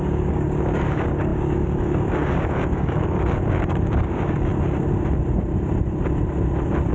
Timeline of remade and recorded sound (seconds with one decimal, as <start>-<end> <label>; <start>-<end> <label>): 0.0-4.5 remade; 4.5-6.9 recorded